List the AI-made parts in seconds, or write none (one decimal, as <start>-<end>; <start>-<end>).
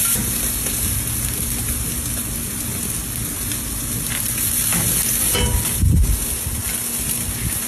none